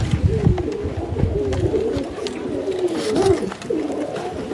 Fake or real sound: real